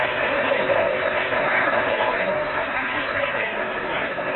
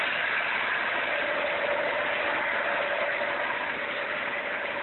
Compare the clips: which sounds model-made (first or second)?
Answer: first